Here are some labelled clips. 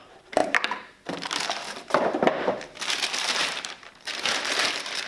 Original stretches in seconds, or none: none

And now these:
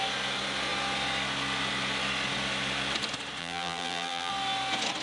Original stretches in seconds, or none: 0.0-3.4; 4.3-5.0

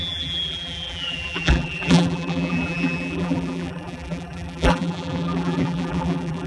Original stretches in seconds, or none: none

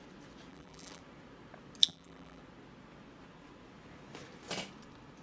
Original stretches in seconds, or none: 0.0-0.5; 1.0-1.8; 2.4-5.2

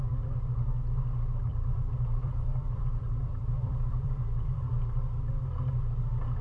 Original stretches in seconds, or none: 0.0-1.5; 4.7-6.4

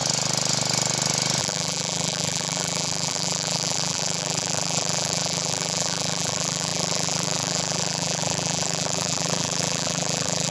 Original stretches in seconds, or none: 0.0-1.4

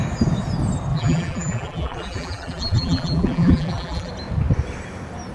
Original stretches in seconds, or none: 0.0-0.9; 4.1-5.3